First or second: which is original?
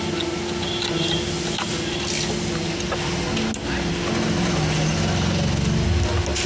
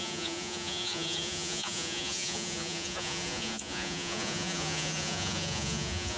first